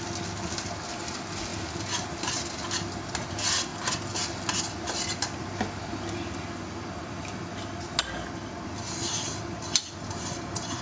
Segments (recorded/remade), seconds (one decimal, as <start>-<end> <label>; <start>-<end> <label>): 0.0-10.8 recorded